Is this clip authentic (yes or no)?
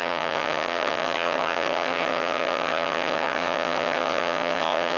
no